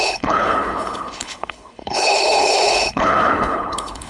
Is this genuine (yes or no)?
no